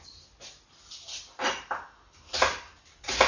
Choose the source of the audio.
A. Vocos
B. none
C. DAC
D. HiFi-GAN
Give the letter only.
B